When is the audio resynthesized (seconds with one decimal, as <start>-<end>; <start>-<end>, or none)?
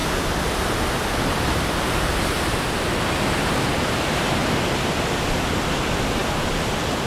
3.4-4.4; 5.1-7.1